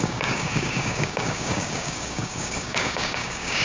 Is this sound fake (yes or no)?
yes